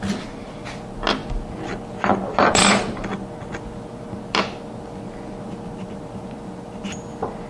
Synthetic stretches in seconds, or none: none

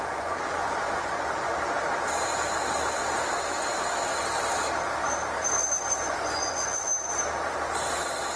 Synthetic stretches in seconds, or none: 0.0-1.5 (vocoder, Vocos); 6.0-6.9